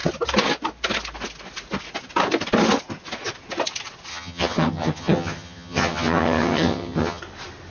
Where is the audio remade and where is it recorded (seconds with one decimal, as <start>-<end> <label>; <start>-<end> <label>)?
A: 0.0-4.1 recorded; 4.1-7.2 remade; 7.2-7.7 recorded